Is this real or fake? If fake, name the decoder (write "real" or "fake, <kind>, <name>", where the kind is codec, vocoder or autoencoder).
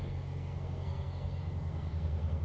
fake, codec, SNAC